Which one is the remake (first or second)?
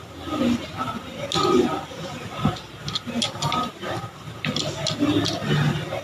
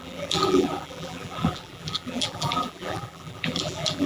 second